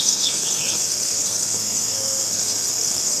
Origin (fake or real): fake